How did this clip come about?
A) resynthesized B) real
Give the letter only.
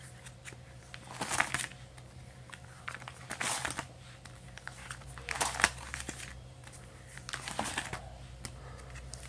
B